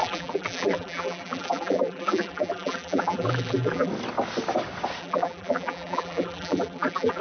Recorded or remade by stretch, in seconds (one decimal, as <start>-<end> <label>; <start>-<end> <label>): 0.0-3.9 remade; 3.9-5.0 recorded; 5.0-7.2 remade